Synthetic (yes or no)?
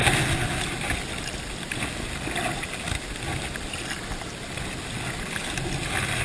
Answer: no